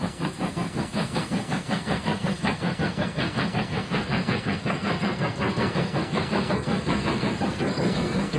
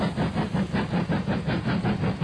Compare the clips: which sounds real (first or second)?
second